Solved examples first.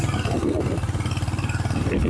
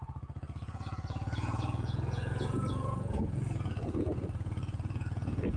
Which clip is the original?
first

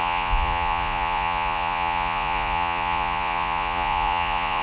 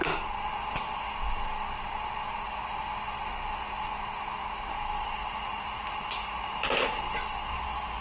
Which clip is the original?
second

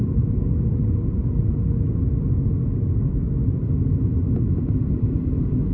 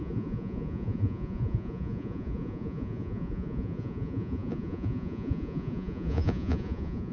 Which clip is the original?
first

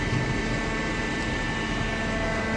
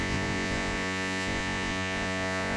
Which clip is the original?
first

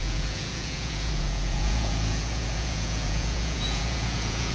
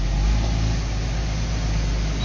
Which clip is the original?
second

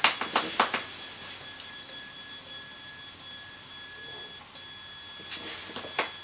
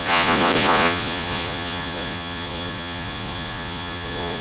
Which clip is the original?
first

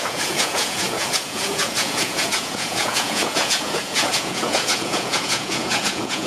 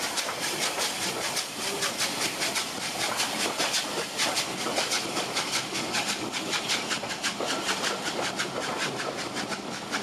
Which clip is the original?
second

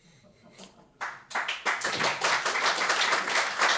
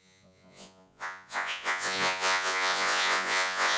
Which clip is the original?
first